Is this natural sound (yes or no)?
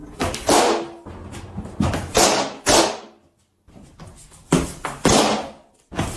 yes